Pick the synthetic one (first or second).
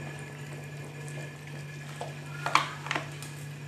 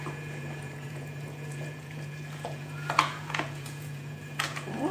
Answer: second